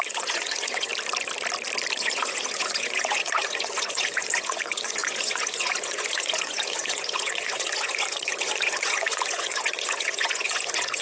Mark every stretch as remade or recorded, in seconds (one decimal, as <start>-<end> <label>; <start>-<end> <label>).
0.0-0.9 remade; 0.9-2.0 recorded; 2.0-11.0 remade